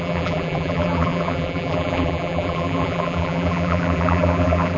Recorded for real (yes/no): no